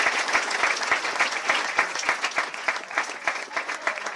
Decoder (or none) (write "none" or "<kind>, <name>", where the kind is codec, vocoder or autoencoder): vocoder, Vocos